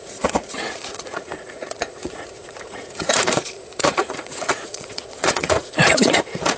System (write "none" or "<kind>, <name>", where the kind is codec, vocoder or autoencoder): vocoder, Vocos